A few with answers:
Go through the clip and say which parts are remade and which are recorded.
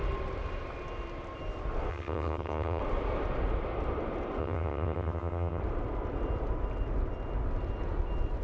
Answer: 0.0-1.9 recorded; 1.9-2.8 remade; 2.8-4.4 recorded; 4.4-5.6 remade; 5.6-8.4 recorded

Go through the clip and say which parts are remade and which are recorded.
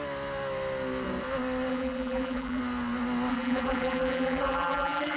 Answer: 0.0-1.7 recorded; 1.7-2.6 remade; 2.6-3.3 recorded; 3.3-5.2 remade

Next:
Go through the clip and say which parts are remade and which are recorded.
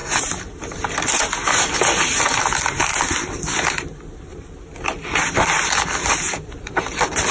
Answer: 0.0-0.8 recorded; 0.8-7.3 remade